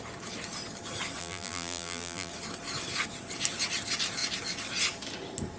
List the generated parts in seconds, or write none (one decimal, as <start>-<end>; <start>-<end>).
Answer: 1.2-2.3